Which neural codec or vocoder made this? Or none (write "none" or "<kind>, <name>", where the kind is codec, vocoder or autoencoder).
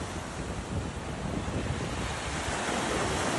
none